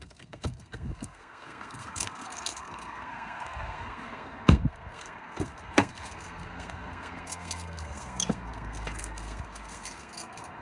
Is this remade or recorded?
remade